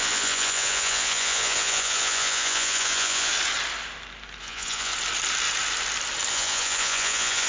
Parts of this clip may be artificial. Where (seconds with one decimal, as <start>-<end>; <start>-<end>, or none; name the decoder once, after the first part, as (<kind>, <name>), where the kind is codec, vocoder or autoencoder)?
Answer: 0.0-3.3 (vocoder, Vocos); 4.4-4.9; 6.3-7.5